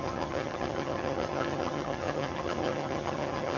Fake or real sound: fake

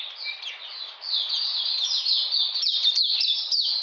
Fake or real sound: real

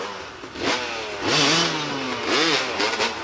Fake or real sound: real